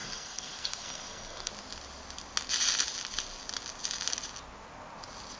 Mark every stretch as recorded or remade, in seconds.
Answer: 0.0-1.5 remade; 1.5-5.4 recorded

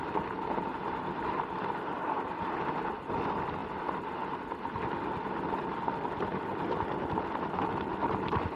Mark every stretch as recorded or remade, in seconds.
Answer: 0.0-8.6 recorded

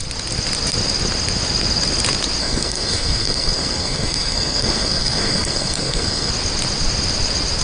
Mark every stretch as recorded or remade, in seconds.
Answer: 0.0-2.4 recorded; 2.4-6.3 remade; 6.3-7.6 recorded

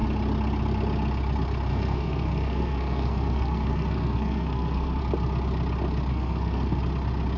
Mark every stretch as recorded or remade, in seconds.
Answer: 0.0-1.7 recorded; 1.7-5.0 remade; 5.0-6.1 recorded; 6.1-6.8 remade; 6.8-7.4 recorded

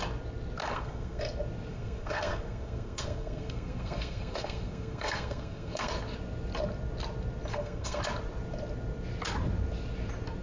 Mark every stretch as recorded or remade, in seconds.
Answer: 0.0-0.6 recorded; 0.6-1.2 remade; 1.2-1.7 recorded; 1.7-5.9 remade; 5.9-7.5 recorded; 7.5-8.0 remade; 8.0-10.4 recorded